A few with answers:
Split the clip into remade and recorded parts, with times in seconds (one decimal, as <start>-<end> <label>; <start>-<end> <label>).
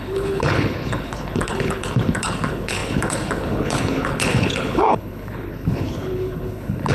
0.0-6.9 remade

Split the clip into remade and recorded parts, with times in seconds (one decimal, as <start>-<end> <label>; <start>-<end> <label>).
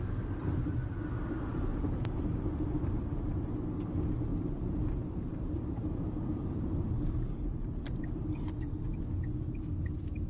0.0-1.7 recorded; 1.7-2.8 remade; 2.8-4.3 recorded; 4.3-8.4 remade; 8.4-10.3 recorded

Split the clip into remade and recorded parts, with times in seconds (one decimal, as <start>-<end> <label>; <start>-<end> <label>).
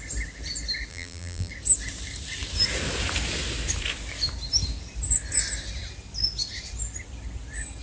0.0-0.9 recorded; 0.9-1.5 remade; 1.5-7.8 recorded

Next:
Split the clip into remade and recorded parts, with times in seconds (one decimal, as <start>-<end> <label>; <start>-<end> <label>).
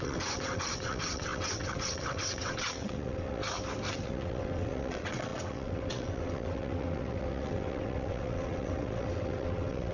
0.0-3.4 remade; 3.4-3.9 recorded; 3.9-9.9 remade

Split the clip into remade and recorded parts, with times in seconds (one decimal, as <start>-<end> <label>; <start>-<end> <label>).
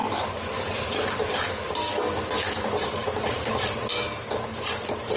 0.0-5.2 recorded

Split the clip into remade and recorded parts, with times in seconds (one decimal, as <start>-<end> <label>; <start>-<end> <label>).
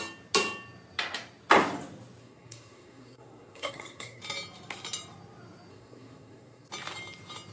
0.0-2.2 recorded; 2.2-4.2 remade; 4.2-5.7 recorded; 5.7-6.7 remade; 6.7-7.5 recorded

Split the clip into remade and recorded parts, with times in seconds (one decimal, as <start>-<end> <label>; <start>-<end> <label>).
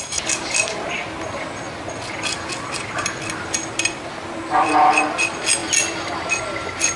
0.0-7.0 recorded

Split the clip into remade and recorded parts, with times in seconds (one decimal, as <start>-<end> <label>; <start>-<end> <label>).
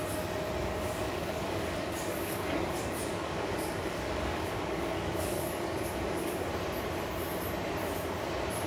0.0-0.6 recorded; 0.6-6.5 remade; 6.5-8.7 recorded